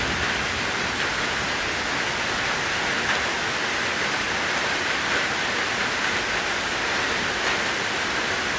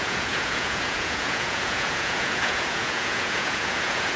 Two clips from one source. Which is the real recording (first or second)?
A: first